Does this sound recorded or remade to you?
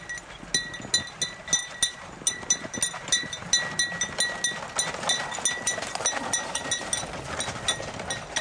recorded